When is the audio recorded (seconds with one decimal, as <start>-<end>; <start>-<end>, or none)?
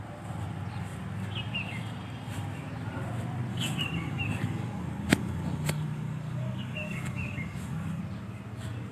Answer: 0.0-3.5; 8.0-8.9